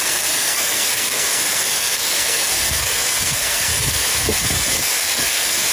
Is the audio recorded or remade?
remade